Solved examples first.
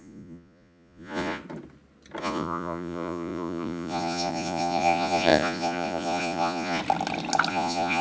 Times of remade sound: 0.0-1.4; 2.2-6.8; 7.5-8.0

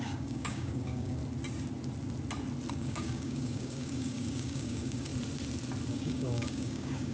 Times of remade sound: 0.0-1.2; 2.7-5.1; 5.9-7.1

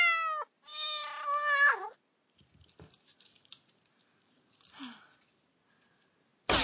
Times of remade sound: none

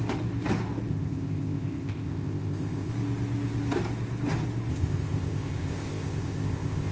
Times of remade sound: 0.9-2.9; 4.7-6.9

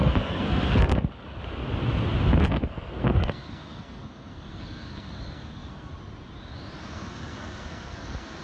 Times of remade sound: 0.0-1.4; 2.4-5.9; 6.8-8.4

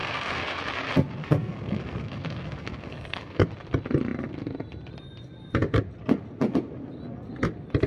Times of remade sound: 0.0-0.6; 1.2-3.5

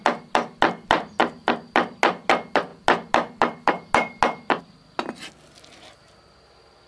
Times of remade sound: none

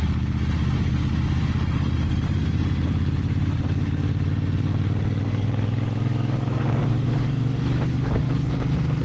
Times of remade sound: 5.3-8.5